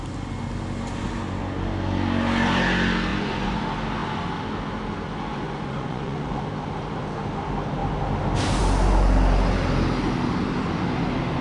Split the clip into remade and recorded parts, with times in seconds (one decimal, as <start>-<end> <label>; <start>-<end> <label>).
0.0-3.1 recorded; 3.1-3.6 remade; 3.6-5.3 recorded; 5.3-6.4 remade; 6.4-11.4 recorded